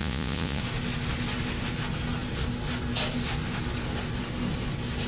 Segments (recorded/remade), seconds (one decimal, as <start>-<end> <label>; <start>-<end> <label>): 0.0-0.6 remade; 0.6-5.1 recorded